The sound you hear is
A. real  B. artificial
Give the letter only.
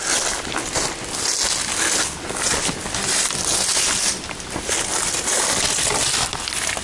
A